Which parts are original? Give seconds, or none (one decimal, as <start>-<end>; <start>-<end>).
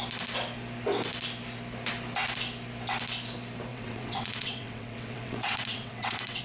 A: 0.0-3.7